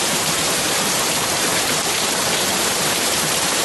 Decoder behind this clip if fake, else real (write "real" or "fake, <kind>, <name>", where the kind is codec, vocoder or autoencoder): fake, vocoder, BigVGAN v2